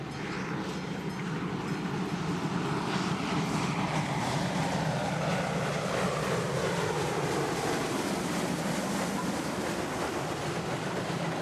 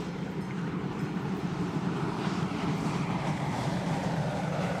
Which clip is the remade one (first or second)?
second